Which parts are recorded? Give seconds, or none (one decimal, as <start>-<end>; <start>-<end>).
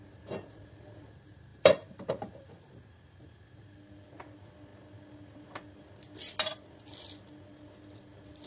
0.0-1.5; 2.7-8.5